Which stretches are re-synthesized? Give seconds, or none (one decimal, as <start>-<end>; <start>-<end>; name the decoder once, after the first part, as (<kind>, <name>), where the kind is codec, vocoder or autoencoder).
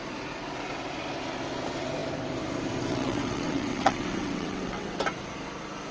2.9-5.0 (vocoder, WaveNeXt)